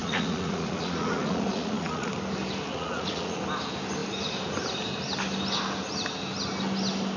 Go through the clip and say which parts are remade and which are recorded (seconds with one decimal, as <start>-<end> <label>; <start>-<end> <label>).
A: 0.0-2.1 remade; 2.1-2.7 recorded; 2.7-3.4 remade; 3.4-7.2 recorded

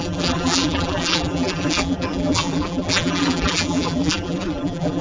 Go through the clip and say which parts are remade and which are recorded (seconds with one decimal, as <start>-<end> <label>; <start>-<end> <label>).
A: 0.0-5.0 remade